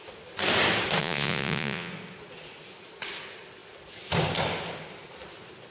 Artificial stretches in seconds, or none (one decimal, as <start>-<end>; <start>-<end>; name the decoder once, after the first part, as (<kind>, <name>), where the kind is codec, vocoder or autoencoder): 1.0-1.9 (vocoder, Vocos)